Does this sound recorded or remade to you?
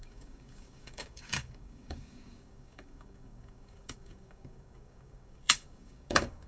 remade